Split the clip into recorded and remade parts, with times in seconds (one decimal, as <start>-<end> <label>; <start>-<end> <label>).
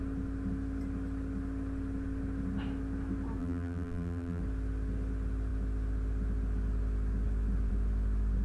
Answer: 0.0-3.4 recorded; 3.4-4.4 remade; 4.4-8.4 recorded